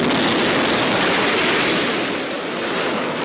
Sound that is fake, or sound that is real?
real